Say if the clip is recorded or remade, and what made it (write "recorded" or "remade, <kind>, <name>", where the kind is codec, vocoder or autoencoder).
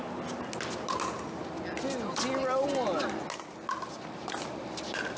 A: recorded